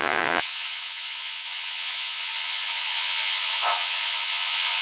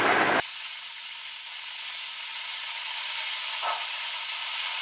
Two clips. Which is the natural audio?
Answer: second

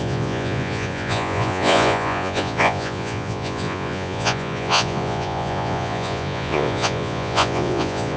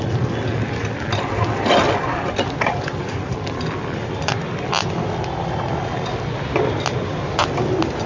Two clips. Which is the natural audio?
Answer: second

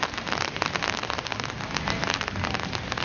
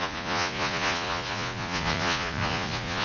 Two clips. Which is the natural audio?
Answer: first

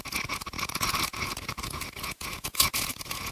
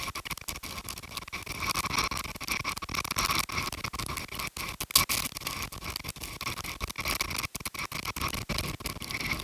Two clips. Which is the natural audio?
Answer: second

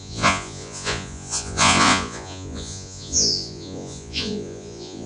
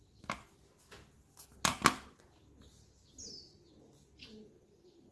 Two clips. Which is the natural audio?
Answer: second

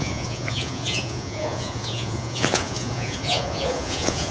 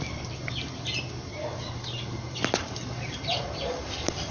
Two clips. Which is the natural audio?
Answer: second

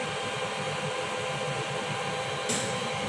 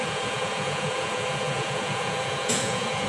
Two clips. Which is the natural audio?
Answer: first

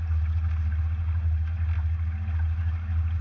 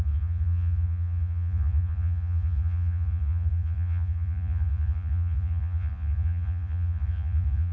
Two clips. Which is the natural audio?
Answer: first